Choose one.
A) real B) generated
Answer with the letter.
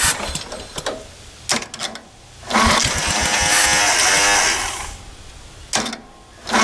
A